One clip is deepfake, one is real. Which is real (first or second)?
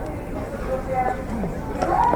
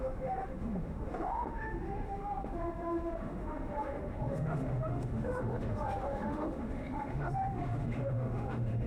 first